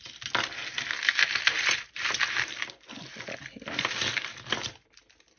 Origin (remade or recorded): recorded